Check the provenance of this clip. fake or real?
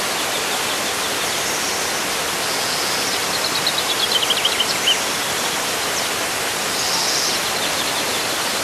real